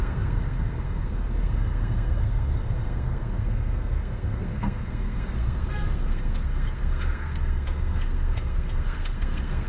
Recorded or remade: remade